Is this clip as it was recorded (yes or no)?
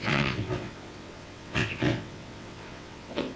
no